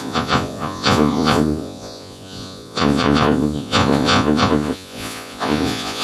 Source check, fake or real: fake